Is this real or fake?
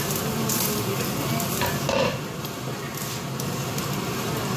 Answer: real